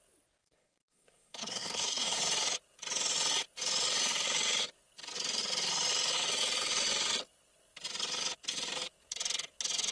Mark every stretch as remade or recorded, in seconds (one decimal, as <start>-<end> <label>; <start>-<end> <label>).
0.0-0.4 recorded; 0.4-2.2 remade; 2.2-9.9 recorded

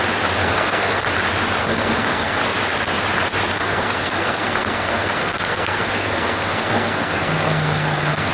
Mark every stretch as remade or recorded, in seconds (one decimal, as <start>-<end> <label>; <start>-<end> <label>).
0.0-0.4 recorded; 0.4-1.0 remade; 1.0-1.6 recorded; 1.6-2.4 remade; 2.4-3.5 recorded; 3.5-8.3 remade

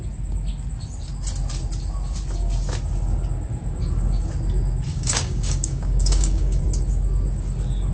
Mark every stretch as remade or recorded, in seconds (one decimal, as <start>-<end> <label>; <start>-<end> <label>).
0.0-4.9 recorded; 4.9-6.6 remade; 6.6-7.9 recorded

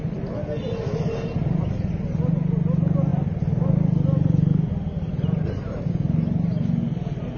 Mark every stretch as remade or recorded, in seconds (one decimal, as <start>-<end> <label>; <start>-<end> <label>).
0.0-7.4 recorded

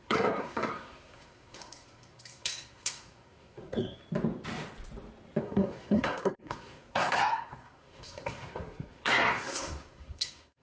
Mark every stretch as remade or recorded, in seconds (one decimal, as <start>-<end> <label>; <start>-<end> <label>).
0.0-4.0 remade; 4.0-5.4 recorded; 5.4-10.6 remade